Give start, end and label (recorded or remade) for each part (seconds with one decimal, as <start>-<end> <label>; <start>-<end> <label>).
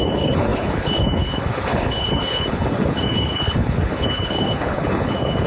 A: 0.0-5.5 remade